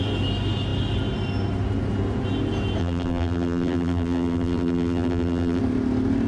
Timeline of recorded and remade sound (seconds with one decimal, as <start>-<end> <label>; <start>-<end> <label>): 0.0-2.8 recorded; 2.8-5.6 remade; 5.6-6.3 recorded